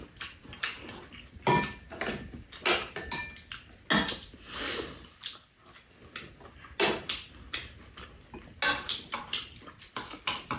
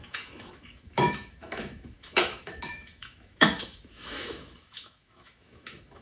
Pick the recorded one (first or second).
first